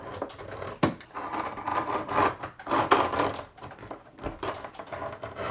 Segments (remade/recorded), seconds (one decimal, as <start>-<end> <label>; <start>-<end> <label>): 0.0-1.7 recorded; 1.7-4.9 remade; 4.9-5.5 recorded